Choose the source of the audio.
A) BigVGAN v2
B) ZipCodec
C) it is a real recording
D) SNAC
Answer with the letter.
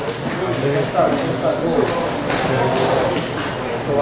C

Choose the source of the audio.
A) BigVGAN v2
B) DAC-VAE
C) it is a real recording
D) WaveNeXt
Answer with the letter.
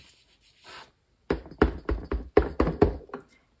A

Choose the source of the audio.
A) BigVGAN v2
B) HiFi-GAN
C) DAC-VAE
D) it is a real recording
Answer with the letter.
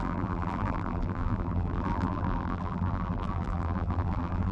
A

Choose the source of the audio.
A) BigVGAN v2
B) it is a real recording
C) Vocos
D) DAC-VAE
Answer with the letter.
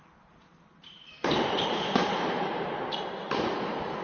A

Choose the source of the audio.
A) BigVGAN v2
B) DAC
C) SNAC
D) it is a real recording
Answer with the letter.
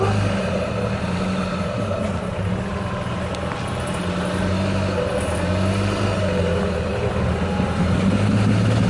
D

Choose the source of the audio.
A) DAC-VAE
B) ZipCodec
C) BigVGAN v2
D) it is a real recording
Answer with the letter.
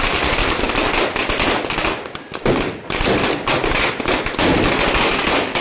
D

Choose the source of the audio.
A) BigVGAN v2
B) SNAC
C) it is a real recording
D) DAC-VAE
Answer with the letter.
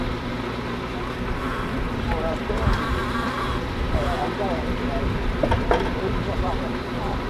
A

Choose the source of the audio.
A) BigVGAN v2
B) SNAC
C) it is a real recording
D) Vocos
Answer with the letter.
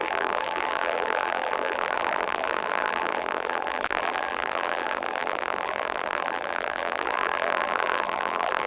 A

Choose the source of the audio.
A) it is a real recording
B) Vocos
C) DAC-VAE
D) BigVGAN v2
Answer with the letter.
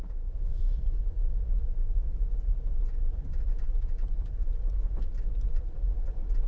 D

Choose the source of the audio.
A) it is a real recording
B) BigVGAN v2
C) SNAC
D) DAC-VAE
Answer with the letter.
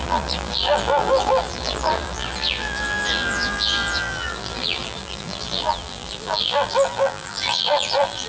B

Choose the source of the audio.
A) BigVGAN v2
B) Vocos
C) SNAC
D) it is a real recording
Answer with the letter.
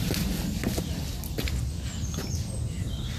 A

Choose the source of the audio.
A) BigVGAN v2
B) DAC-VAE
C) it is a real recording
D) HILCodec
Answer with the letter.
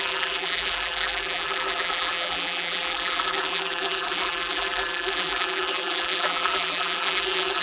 A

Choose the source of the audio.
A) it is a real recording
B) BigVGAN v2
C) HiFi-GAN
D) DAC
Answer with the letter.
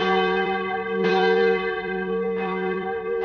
B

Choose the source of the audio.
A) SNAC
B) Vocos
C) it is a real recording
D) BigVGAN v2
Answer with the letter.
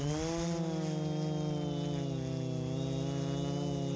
C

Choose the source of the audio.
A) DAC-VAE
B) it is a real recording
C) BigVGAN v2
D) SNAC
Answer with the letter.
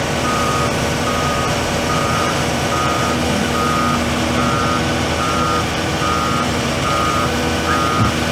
C